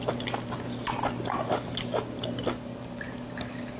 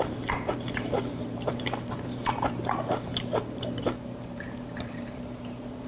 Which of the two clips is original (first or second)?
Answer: first